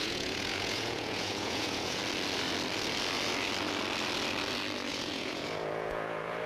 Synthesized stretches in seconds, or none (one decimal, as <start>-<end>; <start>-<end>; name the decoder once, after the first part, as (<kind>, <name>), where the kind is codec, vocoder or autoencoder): 0.0-2.0 (vocoder, Vocos); 4.9-6.5